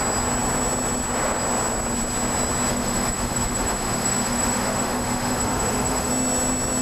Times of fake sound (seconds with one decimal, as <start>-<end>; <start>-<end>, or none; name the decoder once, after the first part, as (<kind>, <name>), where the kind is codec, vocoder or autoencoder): 2.7-6.1 (autoencoder, DAC-VAE)